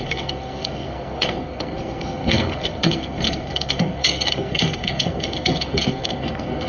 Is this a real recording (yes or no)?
no